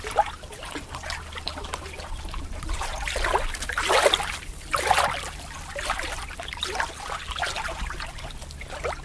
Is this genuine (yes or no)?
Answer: yes